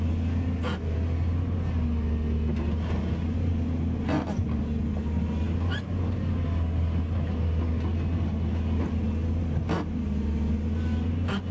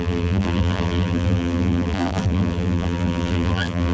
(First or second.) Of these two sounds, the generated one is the second